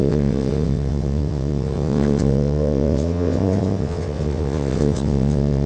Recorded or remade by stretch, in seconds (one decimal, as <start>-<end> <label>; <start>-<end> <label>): 0.0-5.7 remade